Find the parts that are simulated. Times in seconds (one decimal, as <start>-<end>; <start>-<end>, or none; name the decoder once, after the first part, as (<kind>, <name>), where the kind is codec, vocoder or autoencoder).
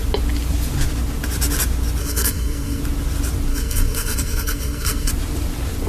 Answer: 2.0-2.8 (codec, SNAC); 3.5-5.1